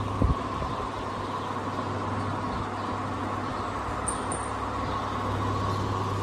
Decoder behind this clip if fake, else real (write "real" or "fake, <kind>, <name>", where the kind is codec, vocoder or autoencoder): real